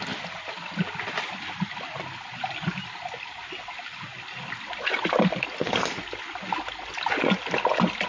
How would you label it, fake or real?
real